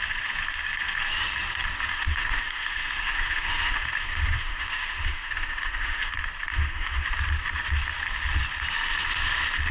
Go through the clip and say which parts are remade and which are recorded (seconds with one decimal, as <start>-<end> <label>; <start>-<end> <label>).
0.0-1.9 recorded; 1.9-6.1 remade; 6.1-6.5 recorded; 6.5-7.1 remade; 7.1-9.7 recorded